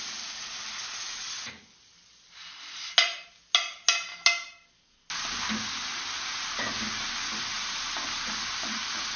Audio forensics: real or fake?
real